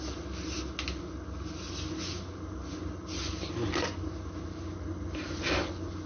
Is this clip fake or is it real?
real